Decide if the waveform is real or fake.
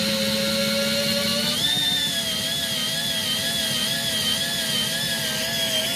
real